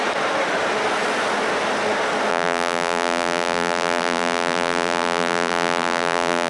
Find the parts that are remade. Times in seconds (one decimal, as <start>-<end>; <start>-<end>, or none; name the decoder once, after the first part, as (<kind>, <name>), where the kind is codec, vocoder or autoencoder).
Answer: 2.3-6.5 (vocoder, BigVGAN v2)